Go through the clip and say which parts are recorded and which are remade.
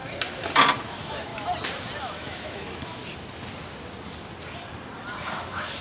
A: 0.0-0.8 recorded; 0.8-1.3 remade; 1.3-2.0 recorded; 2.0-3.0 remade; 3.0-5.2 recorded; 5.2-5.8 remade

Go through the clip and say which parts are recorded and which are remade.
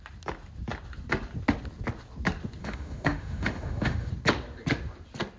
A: 0.0-2.6 recorded; 2.6-4.1 remade; 4.1-5.4 recorded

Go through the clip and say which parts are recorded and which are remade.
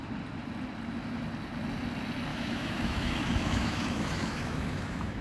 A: 0.0-2.3 recorded; 2.3-5.2 remade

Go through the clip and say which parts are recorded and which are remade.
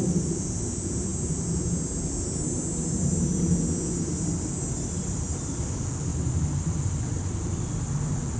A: 0.0-6.1 recorded; 6.1-7.0 remade; 7.0-8.4 recorded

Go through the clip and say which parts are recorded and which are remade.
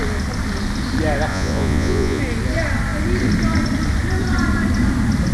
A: 0.0-1.3 recorded; 1.3-2.2 remade; 2.2-5.3 recorded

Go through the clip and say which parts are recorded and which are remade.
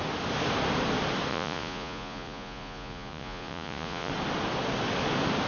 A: 0.0-1.3 recorded; 1.3-4.1 remade; 4.1-5.5 recorded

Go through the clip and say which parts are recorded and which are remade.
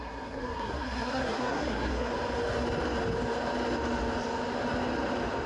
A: 0.0-2.1 remade; 2.1-5.5 recorded